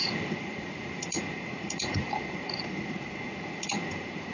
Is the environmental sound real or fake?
fake